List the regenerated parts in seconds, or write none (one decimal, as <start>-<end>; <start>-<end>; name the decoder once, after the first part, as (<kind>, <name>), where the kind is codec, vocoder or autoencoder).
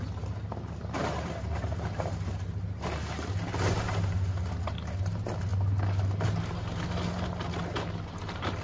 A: none